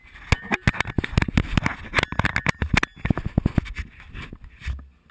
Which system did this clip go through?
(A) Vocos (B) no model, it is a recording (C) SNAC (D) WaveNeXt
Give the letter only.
B